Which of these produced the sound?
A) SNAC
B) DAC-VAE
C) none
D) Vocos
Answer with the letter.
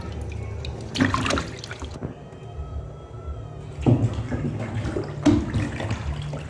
C